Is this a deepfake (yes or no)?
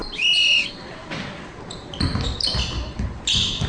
no